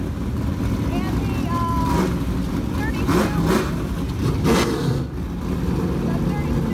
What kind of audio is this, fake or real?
real